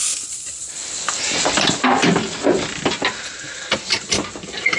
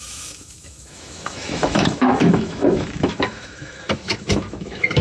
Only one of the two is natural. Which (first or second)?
first